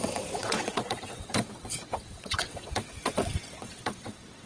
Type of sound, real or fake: fake